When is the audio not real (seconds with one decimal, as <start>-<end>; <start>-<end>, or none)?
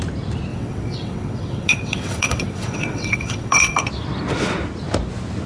0.5-3.8